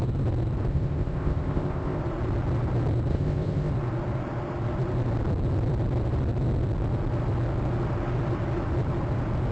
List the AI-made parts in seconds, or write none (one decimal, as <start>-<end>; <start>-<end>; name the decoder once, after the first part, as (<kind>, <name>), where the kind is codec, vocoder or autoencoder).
0.7-2.0 (codec, ZipCodec); 3.1-3.7